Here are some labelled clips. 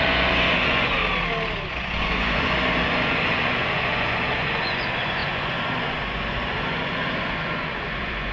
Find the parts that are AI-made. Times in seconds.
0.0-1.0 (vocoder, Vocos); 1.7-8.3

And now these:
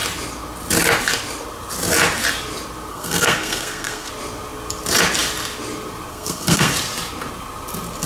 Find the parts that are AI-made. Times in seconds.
2.9-4.1 (codec, SNAC); 6.1-6.7

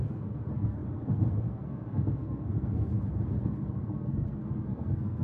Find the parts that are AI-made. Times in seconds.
0.0-5.2 (codec, SNAC)

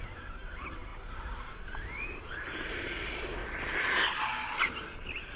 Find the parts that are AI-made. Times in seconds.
0.0-3.4 (vocoder, BigVGAN v2)